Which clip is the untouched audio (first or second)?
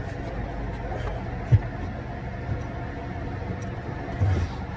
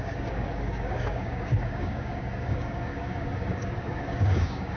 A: first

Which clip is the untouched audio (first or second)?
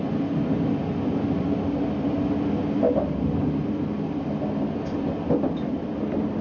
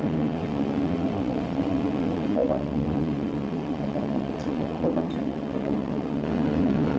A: first